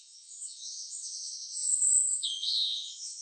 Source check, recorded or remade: remade